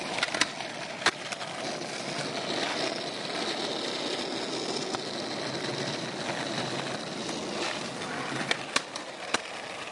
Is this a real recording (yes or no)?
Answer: yes